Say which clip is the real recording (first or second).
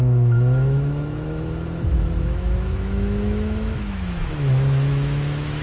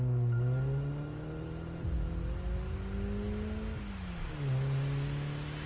second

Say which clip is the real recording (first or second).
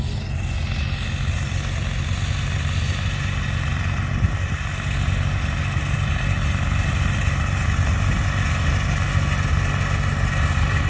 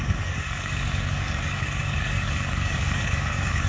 first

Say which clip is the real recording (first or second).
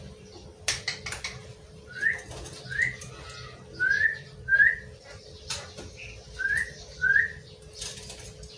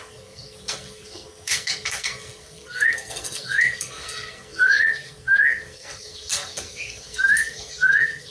first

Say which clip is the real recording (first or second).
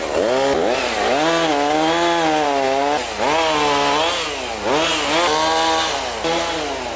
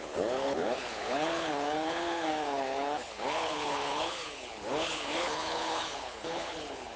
first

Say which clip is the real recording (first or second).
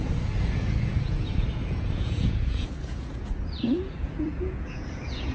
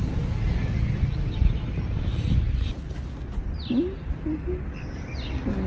second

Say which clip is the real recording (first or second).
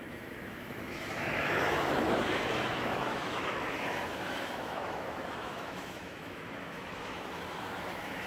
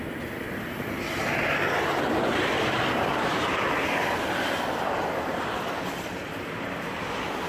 second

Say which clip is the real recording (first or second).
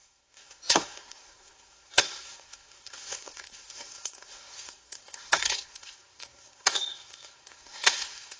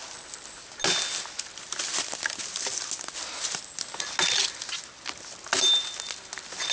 second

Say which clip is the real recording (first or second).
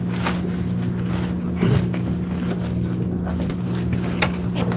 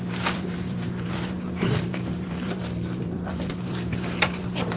first